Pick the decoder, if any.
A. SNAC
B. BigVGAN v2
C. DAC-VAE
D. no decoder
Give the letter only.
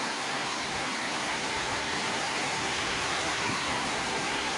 A